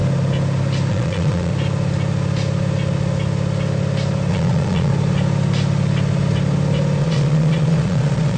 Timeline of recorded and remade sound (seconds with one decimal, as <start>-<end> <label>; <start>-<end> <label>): 0.0-0.9 recorded; 0.9-1.5 remade; 1.5-4.3 recorded; 4.3-4.9 remade; 4.9-7.0 recorded; 7.0-8.4 remade